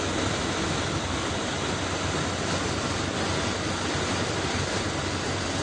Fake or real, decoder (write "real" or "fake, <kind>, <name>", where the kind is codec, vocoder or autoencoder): real